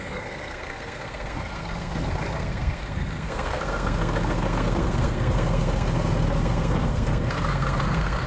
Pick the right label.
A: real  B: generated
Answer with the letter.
B